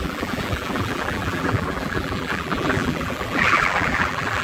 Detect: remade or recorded remade